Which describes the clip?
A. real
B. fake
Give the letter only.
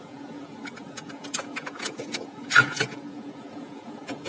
B